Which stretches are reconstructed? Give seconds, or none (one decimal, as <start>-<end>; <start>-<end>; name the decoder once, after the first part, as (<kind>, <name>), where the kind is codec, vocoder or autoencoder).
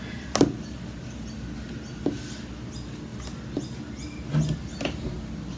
none